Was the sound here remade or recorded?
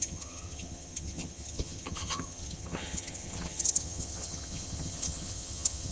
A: remade